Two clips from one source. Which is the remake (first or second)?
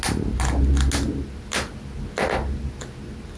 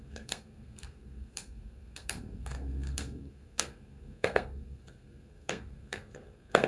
second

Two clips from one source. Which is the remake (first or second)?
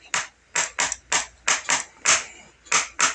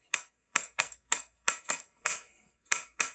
second